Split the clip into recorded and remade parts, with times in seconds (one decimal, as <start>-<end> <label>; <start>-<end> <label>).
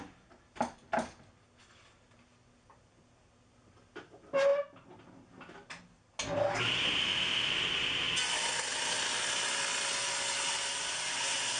0.0-7.0 recorded; 7.0-7.5 remade; 7.5-11.6 recorded